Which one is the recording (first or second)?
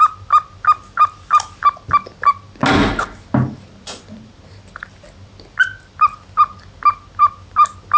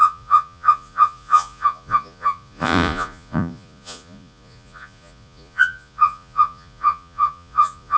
first